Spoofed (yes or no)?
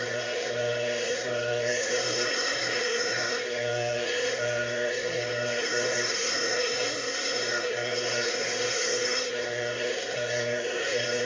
yes